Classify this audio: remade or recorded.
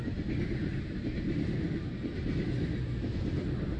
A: recorded